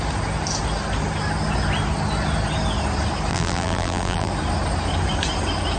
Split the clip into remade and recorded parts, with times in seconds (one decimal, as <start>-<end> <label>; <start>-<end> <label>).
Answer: 0.0-3.3 recorded; 3.3-4.3 remade; 4.3-5.8 recorded